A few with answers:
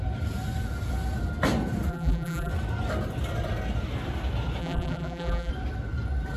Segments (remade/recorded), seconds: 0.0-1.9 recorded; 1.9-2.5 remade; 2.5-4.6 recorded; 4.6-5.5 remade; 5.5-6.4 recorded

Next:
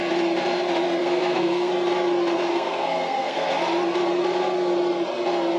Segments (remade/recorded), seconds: 0.0-1.0 recorded; 1.0-1.7 remade; 1.7-2.5 recorded; 2.5-3.5 remade; 3.5-5.6 recorded

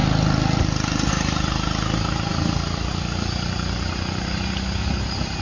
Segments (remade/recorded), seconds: 0.0-5.4 recorded

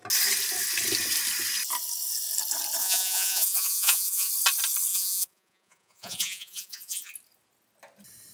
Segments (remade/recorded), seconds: 0.0-2.8 recorded; 2.8-4.3 remade; 4.3-4.9 recorded; 4.9-7.1 remade; 7.1-8.3 recorded

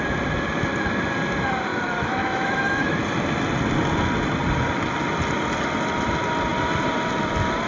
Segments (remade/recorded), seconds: 0.0-1.7 recorded; 1.7-3.0 remade; 3.0-7.7 recorded